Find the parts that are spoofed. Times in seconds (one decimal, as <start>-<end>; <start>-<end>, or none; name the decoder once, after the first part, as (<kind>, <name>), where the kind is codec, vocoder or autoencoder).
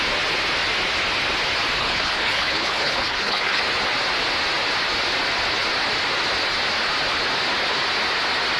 1.8-3.6 (codec, HILCodec)